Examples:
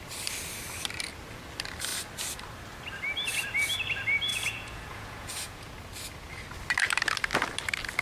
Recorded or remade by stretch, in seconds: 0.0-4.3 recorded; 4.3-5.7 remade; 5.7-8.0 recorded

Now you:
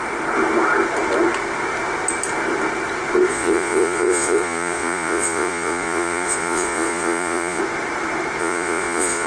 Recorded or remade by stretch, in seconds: 0.0-3.3 recorded; 3.3-7.6 remade; 7.6-8.4 recorded; 8.4-9.3 remade

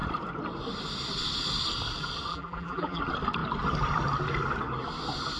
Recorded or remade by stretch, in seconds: 0.0-2.3 recorded; 2.3-3.0 remade; 3.0-5.4 recorded

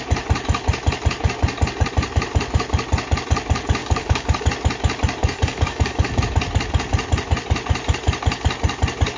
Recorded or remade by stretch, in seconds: 0.0-3.8 recorded; 3.8-4.4 remade; 4.4-5.2 recorded; 5.2-6.2 remade; 6.2-9.2 recorded

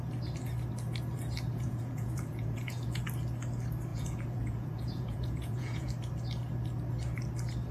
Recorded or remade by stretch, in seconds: 0.0-1.5 recorded; 1.5-3.0 remade; 3.0-3.9 recorded; 3.9-5.9 remade; 5.9-7.7 recorded

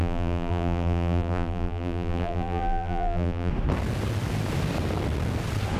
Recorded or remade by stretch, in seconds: 0.0-3.5 remade; 3.5-5.8 recorded